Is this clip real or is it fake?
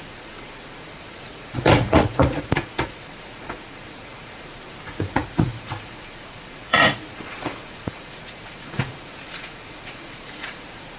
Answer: fake